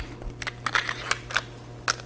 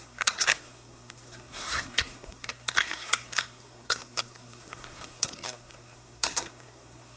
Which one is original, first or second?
first